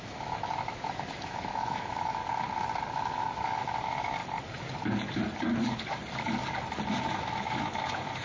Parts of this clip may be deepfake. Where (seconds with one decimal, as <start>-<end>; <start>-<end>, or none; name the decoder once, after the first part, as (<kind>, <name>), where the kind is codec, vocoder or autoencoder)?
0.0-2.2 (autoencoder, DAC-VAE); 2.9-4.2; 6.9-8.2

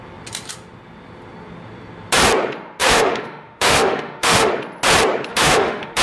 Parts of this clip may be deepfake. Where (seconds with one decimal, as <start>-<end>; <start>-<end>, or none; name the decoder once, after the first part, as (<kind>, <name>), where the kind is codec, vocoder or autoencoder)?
2.8-4.5 (autoencoder, DAC-VAE); 5.3-6.0

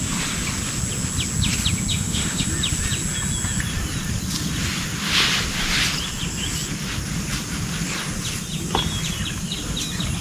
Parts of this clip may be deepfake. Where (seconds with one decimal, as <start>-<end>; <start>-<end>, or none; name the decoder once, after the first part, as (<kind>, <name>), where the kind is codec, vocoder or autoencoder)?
1.9-2.5 (autoencoder, DAC-VAE)